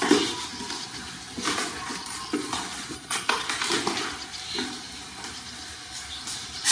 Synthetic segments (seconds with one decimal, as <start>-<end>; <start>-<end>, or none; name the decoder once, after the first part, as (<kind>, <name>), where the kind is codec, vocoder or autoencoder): none